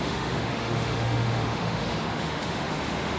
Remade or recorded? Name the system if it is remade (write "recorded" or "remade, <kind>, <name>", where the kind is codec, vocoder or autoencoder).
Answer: remade, autoencoder, DAC-VAE